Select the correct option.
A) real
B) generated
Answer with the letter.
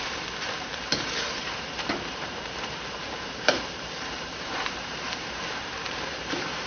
B